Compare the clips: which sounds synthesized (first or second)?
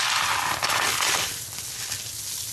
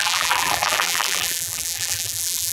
second